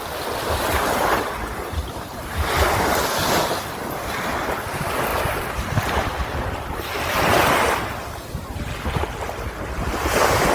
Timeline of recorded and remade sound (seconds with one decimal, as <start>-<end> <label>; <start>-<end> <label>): 0.0-10.5 recorded